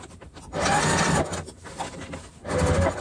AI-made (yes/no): no